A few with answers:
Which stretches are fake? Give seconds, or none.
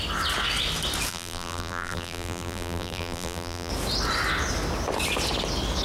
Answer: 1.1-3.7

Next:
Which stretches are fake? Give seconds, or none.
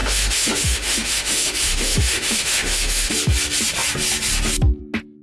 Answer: 0.0-3.1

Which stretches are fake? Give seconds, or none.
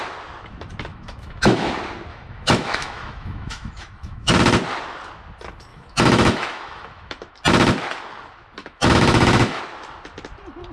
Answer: 0.9-1.7; 2.1-4.3; 5.7-7.3; 8.6-9.6